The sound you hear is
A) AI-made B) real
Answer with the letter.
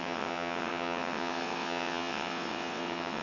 A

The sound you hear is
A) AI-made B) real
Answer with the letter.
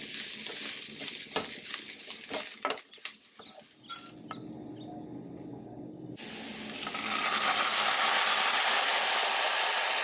B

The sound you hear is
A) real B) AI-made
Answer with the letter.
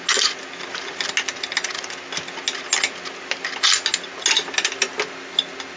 A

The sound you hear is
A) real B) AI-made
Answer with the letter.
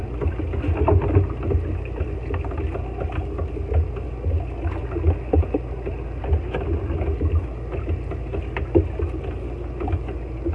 A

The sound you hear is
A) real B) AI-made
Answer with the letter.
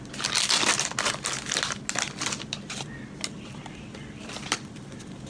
A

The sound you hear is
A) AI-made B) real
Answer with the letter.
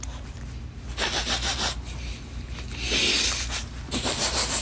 B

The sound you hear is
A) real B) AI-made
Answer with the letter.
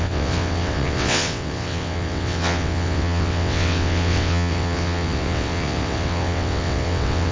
B